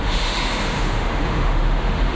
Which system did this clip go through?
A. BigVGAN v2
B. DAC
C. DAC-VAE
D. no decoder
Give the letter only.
C